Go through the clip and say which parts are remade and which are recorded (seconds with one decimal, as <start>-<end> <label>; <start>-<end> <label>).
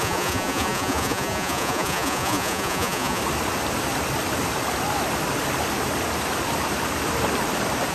0.0-3.2 remade; 3.2-7.9 recorded